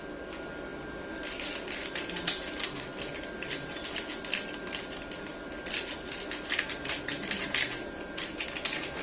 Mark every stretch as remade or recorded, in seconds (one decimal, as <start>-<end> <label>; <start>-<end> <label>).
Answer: 0.0-9.0 recorded